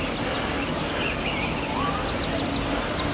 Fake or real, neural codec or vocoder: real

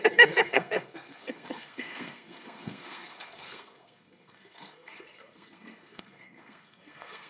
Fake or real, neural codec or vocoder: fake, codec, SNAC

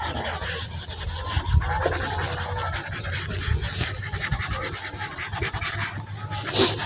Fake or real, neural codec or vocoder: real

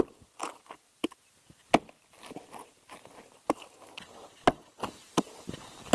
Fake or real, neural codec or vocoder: real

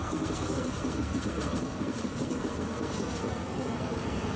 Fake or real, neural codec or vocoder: fake, codec, SNAC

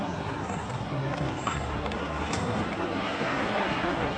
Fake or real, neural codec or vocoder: fake, codec, SNAC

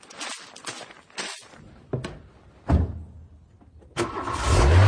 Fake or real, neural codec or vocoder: real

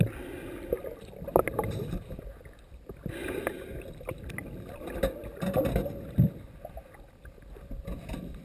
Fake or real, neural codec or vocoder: real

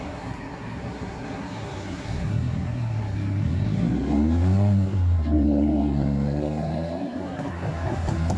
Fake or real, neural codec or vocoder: fake, codec, SNAC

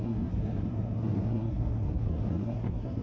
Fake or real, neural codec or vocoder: fake, codec, SNAC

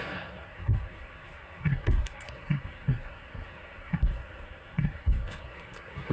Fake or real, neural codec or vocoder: fake, codec, SNAC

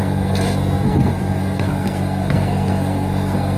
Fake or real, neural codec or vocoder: fake, codec, SNAC